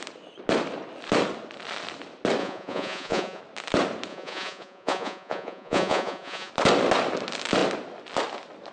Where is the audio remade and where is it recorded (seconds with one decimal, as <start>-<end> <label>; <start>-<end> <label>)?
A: 0.0-2.4 recorded; 2.4-3.4 remade; 3.4-4.1 recorded; 4.1-6.5 remade; 6.5-8.7 recorded